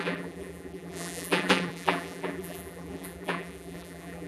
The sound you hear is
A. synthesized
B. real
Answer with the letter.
A